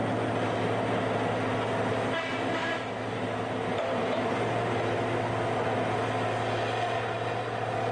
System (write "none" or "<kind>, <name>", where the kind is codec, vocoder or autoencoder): none